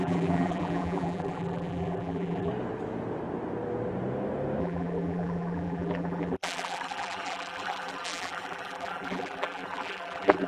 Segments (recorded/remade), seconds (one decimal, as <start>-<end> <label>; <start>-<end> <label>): 0.0-2.5 remade; 2.5-4.6 recorded; 4.6-10.5 remade